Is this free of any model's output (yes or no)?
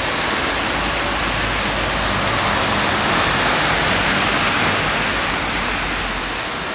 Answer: yes